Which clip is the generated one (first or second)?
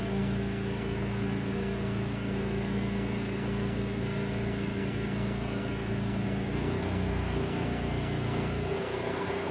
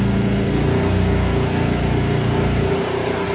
first